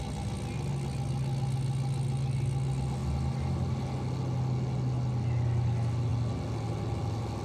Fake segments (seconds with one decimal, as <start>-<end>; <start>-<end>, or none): none